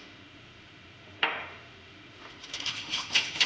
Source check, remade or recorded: remade